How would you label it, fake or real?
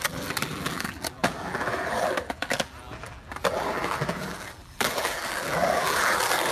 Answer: fake